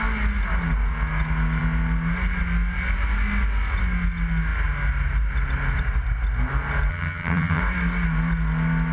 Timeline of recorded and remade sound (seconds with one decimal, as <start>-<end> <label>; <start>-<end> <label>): 0.0-6.9 recorded; 6.9-7.6 remade; 7.6-8.9 recorded